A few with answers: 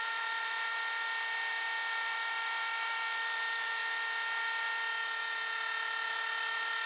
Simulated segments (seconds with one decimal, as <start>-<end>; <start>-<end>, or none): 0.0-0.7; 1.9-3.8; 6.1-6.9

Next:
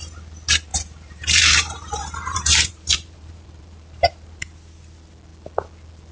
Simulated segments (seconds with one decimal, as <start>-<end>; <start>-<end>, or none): 0.7-4.4

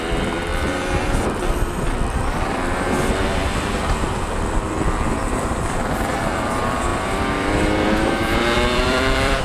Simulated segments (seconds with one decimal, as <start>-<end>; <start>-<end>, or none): 0.0-0.5; 3.2-9.4

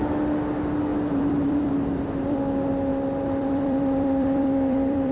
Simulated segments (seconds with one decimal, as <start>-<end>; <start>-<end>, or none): 0.9-1.7; 2.9-5.1

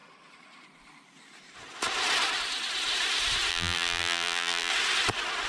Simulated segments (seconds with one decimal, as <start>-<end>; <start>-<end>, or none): 3.5-4.7

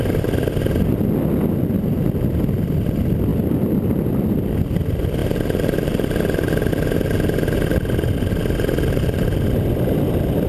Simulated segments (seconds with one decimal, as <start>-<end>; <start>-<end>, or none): 3.3-4.1; 5.2-6.7